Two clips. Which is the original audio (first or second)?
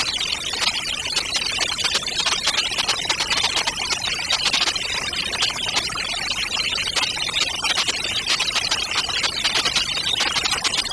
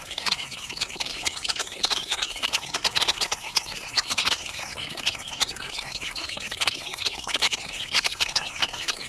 first